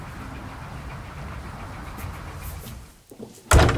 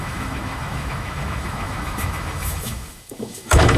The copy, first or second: second